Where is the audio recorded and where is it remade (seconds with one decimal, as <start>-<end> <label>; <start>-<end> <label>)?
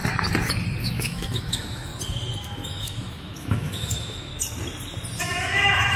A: 0.0-0.8 recorded; 0.8-1.9 remade; 1.9-2.4 recorded; 2.4-4.3 remade; 4.3-5.2 recorded; 5.2-6.0 remade